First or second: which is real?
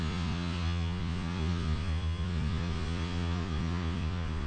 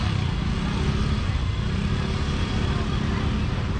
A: second